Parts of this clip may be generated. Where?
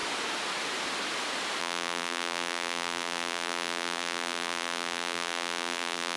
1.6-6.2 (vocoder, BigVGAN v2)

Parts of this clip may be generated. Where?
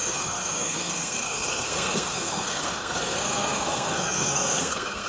0.0-5.1 (codec, SNAC)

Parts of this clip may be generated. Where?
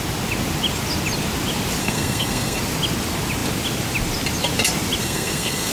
1.8-2.6 (codec, SNAC); 5.0-5.7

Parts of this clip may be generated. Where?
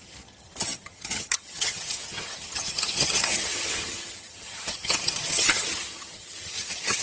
0.0-7.0 (vocoder, HiFi-GAN)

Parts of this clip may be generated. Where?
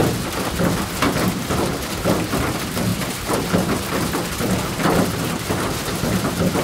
none